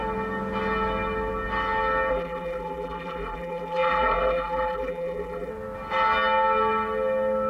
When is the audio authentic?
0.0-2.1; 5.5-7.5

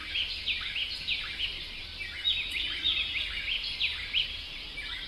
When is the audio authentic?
0.0-1.4; 1.9-5.1

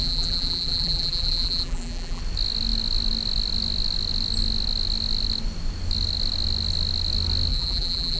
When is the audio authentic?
2.2-7.5

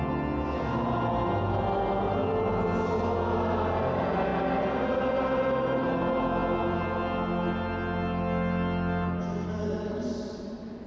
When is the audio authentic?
0.0-10.9

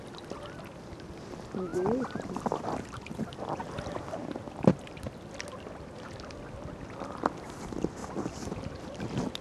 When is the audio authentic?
0.0-9.4

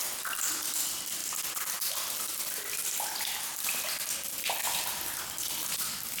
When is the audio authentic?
0.0-6.2